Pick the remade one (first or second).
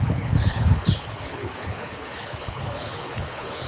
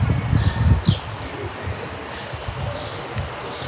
first